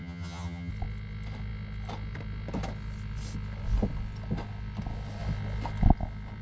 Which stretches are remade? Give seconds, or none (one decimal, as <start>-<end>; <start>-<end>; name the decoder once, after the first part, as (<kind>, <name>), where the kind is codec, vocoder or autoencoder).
0.0-0.7 (vocoder, HiFi-GAN)